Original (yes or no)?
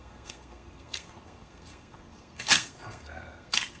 no